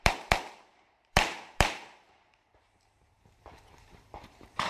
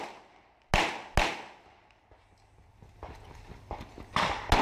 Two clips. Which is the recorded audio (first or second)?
second